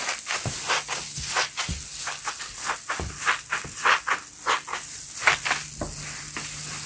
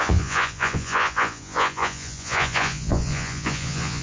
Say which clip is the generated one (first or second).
second